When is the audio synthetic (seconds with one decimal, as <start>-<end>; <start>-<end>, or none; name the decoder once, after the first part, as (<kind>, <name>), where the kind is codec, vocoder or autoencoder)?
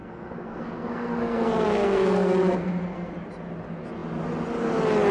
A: 0.0-3.1 (codec, SNAC)